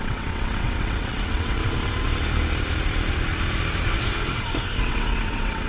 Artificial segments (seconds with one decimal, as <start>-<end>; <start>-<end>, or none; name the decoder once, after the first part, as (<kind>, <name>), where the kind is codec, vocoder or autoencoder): 0.0-1.6 (vocoder, WaveNeXt); 4.8-5.7